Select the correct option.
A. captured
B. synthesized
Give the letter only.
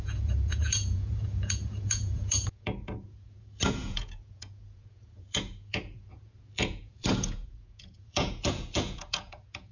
B